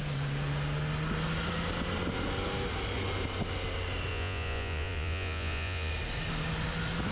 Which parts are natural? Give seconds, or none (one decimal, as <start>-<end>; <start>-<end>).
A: 0.0-4.1; 5.9-7.1